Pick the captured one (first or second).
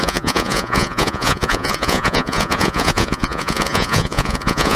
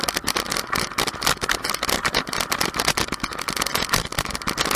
second